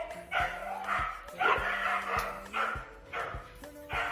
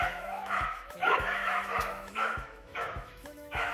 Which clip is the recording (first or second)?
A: first